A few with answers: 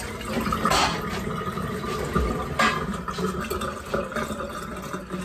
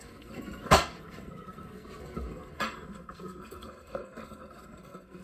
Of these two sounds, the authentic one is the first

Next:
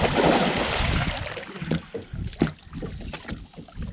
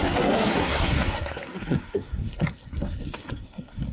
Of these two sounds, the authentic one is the first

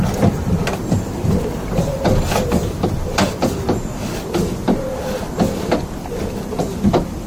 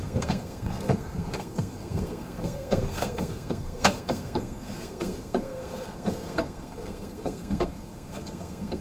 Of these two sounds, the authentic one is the first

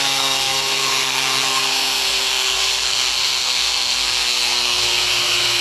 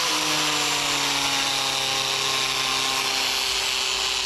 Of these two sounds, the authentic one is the second